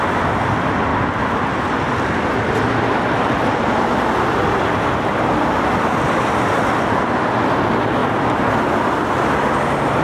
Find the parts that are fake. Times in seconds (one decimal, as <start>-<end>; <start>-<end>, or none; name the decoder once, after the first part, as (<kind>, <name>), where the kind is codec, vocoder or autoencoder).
none